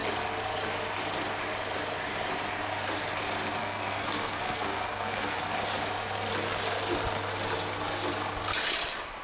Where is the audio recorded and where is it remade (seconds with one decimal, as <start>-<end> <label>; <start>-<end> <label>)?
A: 0.0-3.6 recorded; 3.6-5.4 remade; 5.4-9.2 recorded